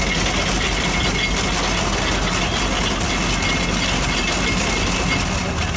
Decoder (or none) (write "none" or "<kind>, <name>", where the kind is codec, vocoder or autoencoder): none